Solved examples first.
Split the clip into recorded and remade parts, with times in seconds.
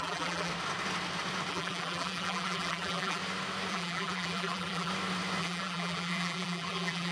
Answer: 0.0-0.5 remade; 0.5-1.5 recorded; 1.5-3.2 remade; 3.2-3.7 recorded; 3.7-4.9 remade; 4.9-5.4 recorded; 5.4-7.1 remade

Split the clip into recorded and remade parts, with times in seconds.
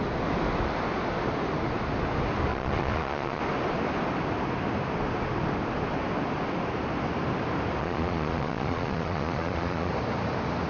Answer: 0.0-2.5 recorded; 2.5-3.4 remade; 3.4-7.8 recorded; 7.8-9.9 remade; 9.9-10.7 recorded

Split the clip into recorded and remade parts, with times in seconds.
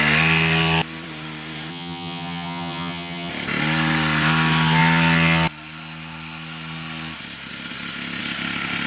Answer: 0.0-1.7 recorded; 1.7-3.3 remade; 3.3-8.9 recorded